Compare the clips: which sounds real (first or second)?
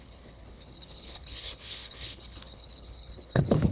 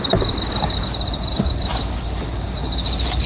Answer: second